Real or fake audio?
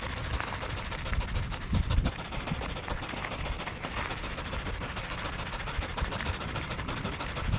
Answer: real